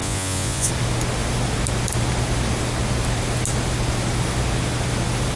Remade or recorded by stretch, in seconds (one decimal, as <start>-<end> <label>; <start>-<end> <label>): 0.0-0.7 remade; 0.7-5.4 recorded